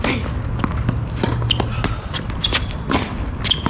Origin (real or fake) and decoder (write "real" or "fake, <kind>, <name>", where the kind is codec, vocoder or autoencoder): real